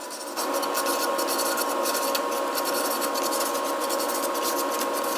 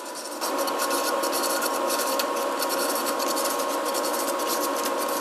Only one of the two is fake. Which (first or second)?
second